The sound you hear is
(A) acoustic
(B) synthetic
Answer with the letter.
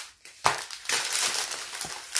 A